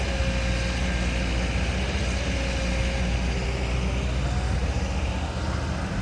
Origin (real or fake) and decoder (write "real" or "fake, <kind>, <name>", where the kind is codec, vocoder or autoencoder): real